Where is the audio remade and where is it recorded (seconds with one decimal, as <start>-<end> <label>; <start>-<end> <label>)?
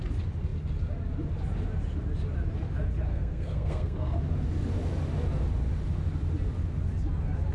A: 0.0-3.1 recorded; 3.1-4.2 remade; 4.2-7.5 recorded